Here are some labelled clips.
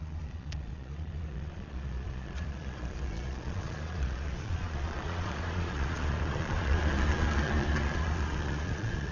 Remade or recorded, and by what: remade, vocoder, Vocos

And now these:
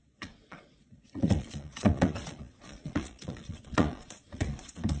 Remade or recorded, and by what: remade, vocoder, Vocos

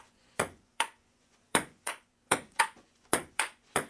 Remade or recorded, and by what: remade, vocoder, Vocos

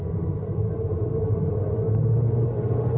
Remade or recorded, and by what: recorded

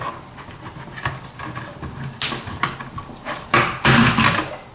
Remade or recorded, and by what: recorded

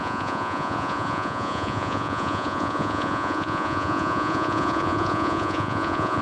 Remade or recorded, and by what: remade, vocoder, Vocos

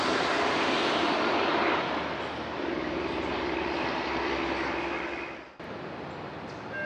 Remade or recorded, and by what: recorded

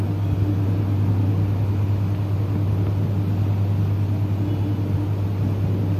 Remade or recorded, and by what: recorded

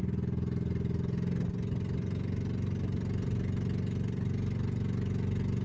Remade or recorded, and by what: recorded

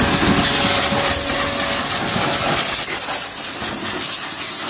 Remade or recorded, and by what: recorded